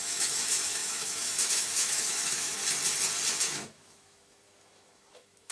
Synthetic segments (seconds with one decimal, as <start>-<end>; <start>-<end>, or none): 0.0-2.6; 3.4-5.5